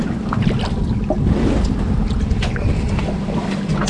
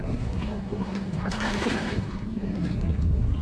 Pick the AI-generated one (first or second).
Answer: second